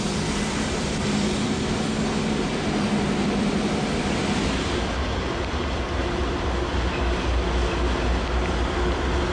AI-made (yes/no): no